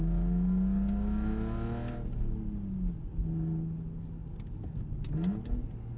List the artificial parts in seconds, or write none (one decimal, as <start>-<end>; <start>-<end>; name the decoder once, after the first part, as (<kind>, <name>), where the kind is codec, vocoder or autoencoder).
none